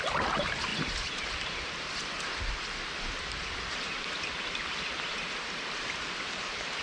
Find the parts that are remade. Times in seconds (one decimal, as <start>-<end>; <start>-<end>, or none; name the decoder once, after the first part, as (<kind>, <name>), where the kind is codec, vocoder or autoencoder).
0.7-2.5 (vocoder, BigVGAN v2)